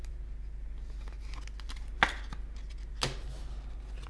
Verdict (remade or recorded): recorded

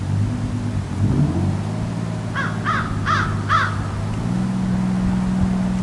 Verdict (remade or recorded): recorded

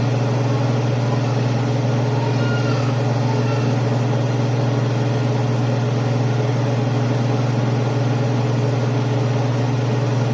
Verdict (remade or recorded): recorded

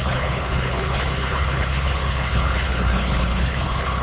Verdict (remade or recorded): remade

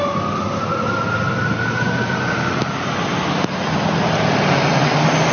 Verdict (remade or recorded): recorded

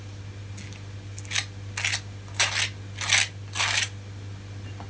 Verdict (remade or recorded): recorded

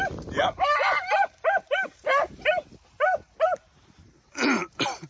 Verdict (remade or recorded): remade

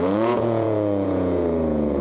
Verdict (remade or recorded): remade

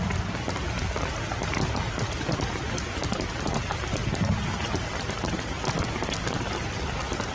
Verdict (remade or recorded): recorded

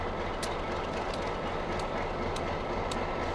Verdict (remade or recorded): recorded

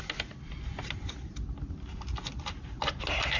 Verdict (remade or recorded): recorded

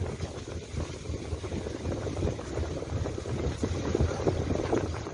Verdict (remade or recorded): recorded